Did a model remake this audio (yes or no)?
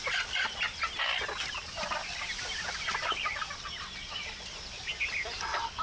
no